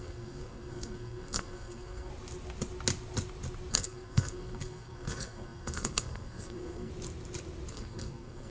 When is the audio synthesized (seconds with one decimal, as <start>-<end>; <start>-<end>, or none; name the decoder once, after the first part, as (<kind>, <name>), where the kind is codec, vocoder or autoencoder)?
0.0-2.1 (codec, SNAC); 3.7-6.9; 7.7-8.5